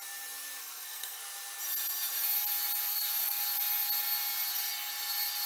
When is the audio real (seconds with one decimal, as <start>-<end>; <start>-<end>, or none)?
0.0-0.6; 1.2-2.9; 3.4-5.5